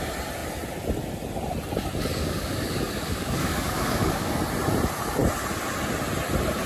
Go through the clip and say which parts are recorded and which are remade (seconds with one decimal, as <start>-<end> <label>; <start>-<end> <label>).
0.0-2.1 recorded; 2.1-4.4 remade; 4.4-6.7 recorded